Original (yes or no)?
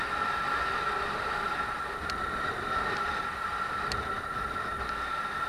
yes